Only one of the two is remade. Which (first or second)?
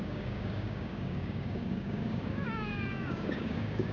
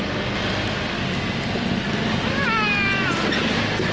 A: first